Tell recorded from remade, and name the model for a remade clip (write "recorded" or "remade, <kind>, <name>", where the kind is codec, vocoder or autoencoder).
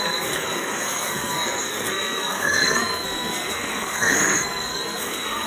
remade, codec, SNAC